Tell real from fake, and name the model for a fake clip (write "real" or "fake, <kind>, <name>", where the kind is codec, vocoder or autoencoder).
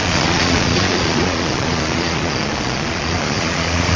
fake, vocoder, Vocos